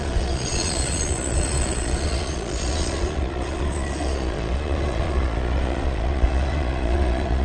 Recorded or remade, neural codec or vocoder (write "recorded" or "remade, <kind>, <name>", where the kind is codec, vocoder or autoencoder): remade, vocoder, Vocos